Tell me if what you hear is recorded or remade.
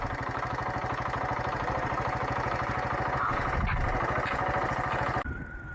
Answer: recorded